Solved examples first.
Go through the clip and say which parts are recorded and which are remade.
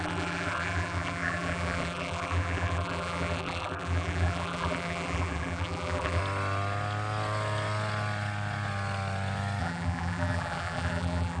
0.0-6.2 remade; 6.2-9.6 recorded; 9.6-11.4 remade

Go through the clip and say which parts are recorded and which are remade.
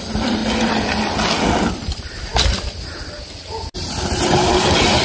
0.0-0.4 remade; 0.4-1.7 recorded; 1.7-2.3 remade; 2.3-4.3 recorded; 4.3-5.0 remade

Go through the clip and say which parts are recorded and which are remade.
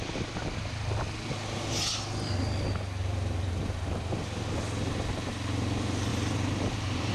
0.0-3.0 recorded; 3.0-3.7 remade; 3.7-6.1 recorded; 6.1-7.1 remade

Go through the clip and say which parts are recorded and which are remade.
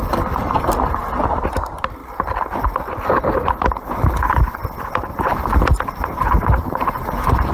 0.0-6.0 recorded; 6.0-7.0 remade; 7.0-7.5 recorded